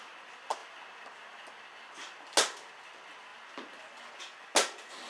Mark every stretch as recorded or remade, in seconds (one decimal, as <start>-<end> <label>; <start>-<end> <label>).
0.0-5.1 recorded